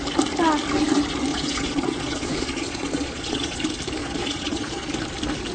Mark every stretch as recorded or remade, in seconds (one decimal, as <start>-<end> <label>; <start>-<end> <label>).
0.0-1.3 recorded; 1.3-3.6 remade; 3.6-4.0 recorded; 4.0-4.9 remade; 4.9-5.5 recorded